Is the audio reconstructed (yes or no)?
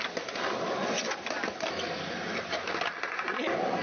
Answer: no